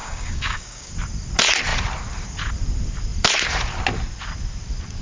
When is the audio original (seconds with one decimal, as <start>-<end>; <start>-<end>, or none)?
0.9-5.0